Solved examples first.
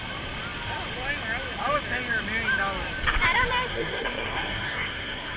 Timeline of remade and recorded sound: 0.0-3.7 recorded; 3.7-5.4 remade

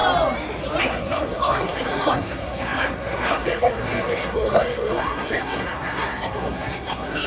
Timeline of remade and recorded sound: 0.0-0.8 recorded; 0.8-7.3 remade

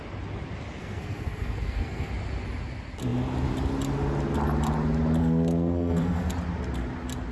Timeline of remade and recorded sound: 0.0-0.8 recorded; 0.8-2.1 remade; 2.1-5.2 recorded; 5.2-6.3 remade; 6.3-7.3 recorded

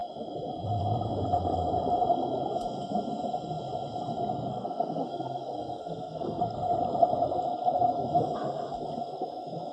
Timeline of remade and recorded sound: 0.0-4.5 recorded; 4.5-6.4 remade; 6.4-9.7 recorded

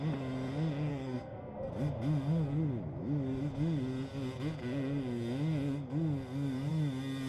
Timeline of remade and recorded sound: 0.0-0.9 recorded; 0.9-1.7 remade; 1.7-7.3 recorded

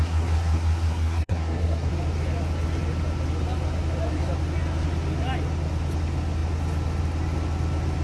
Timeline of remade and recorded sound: 0.0-1.9 remade; 1.9-8.0 recorded